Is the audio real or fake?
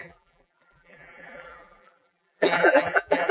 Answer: fake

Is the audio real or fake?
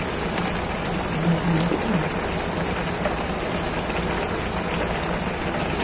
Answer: real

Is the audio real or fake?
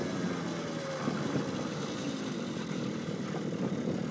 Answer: real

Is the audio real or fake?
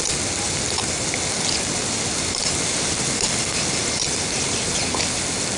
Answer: real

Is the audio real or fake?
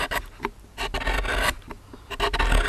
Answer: real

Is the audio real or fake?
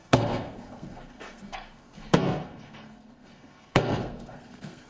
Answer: fake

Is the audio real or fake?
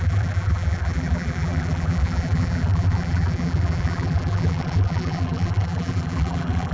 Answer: fake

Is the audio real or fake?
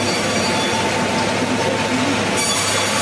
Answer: real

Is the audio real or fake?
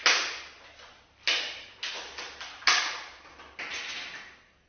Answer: real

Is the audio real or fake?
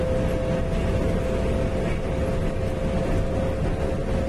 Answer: real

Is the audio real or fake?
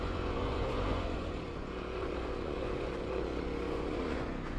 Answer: fake